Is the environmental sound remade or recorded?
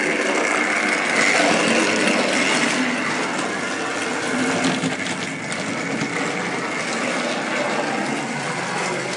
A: recorded